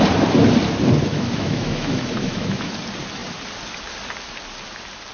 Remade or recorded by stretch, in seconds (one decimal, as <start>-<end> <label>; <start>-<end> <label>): 0.0-1.1 recorded; 1.1-2.7 remade; 2.7-5.1 recorded